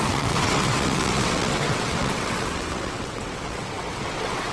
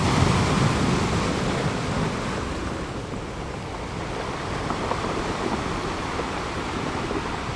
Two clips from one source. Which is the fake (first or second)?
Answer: first